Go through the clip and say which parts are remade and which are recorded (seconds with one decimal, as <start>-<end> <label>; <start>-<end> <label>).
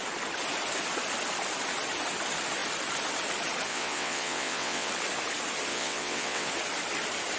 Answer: 0.0-3.7 recorded; 3.7-4.9 remade; 4.9-5.7 recorded; 5.7-6.5 remade; 6.5-7.4 recorded